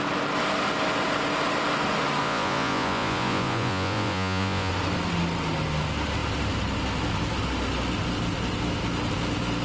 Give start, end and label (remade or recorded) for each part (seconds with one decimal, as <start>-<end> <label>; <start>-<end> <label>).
0.0-2.2 recorded; 2.2-4.7 remade; 4.7-9.6 recorded

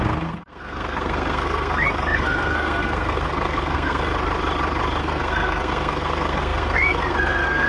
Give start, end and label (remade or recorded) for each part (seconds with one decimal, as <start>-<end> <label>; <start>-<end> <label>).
0.0-4.1 remade; 4.1-5.0 recorded; 5.0-7.7 remade

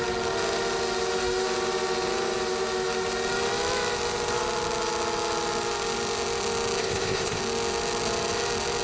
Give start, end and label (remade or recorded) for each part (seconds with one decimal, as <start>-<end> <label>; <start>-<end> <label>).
0.0-6.8 recorded; 6.8-7.4 remade; 7.4-8.8 recorded

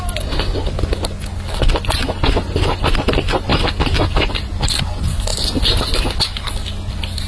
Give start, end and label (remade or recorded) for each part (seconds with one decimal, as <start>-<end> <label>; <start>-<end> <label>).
0.0-7.3 recorded

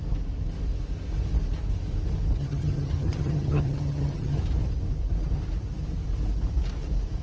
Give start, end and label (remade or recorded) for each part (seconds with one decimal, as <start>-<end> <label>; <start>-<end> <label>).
0.0-2.4 recorded; 2.4-4.4 remade; 4.4-7.2 recorded

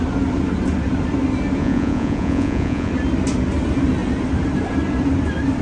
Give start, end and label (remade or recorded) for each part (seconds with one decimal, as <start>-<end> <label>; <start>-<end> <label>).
0.0-1.6 recorded; 1.6-2.9 remade; 2.9-5.6 recorded

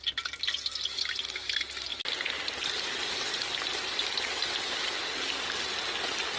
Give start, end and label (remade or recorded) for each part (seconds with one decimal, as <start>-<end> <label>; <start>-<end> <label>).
0.0-6.4 recorded